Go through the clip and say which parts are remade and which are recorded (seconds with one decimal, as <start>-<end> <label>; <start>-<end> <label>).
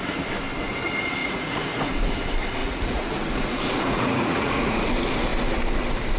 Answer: 0.0-1.2 recorded; 1.2-1.9 remade; 1.9-2.6 recorded; 2.6-4.8 remade; 4.8-6.2 recorded